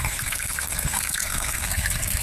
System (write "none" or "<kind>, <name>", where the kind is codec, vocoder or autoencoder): codec, SNAC